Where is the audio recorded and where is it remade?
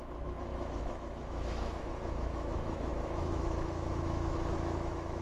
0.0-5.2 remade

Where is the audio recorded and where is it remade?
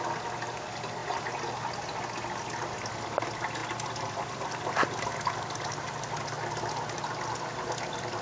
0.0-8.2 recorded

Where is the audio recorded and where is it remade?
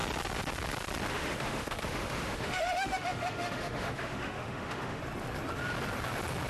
0.0-1.1 recorded; 1.1-5.0 remade; 5.0-6.5 recorded